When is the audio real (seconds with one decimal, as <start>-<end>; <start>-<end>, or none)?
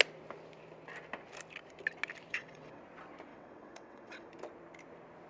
0.0-2.3; 2.8-3.3; 4.3-5.3